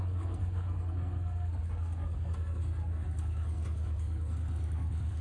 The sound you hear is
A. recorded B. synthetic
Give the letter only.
B